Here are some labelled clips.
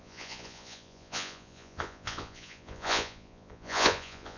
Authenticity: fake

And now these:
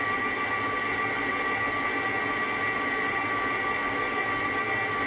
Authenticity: real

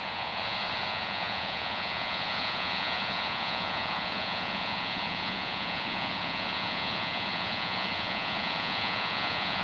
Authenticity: fake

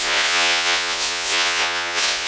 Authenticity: fake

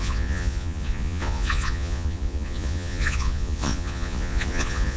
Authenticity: fake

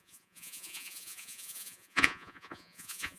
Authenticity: fake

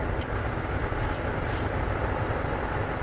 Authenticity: real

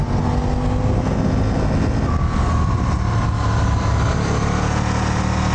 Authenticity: real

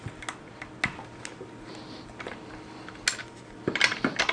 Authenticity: real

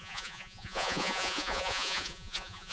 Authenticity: fake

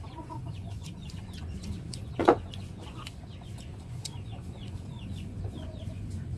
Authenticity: fake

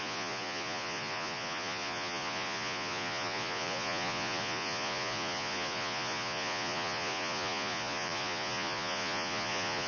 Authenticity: fake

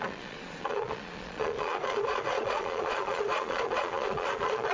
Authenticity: fake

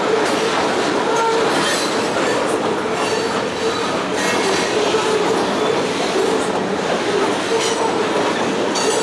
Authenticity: real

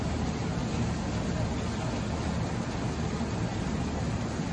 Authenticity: real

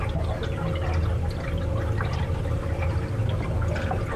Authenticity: real